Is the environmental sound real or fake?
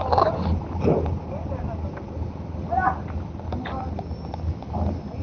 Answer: real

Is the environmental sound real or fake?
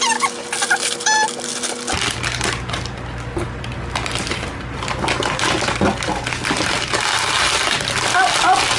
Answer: real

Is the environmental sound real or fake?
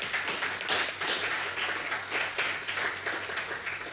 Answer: real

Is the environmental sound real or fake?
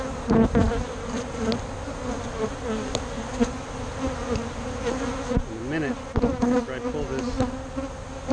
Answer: real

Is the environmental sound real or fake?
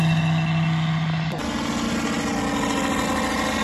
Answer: real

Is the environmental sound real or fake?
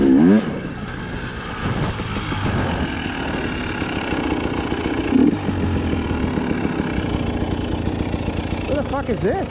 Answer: real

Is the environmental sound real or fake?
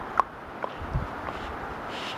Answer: real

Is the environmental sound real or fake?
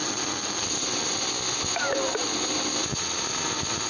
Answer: real